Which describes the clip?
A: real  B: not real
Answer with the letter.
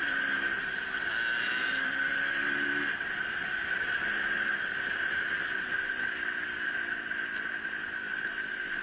A